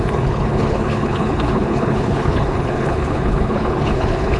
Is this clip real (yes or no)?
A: no